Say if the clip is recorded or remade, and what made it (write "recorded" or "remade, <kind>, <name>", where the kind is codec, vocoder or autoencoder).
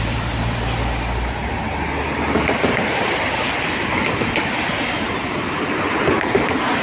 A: remade, vocoder, BigVGAN v2